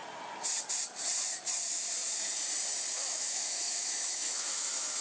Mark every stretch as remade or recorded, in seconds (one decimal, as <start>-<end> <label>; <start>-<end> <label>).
0.0-2.9 recorded; 2.9-5.0 remade